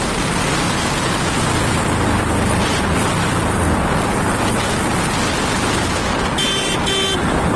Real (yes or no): yes